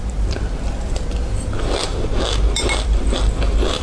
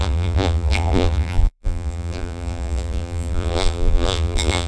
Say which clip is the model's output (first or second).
second